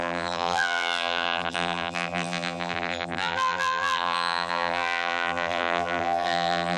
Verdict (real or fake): fake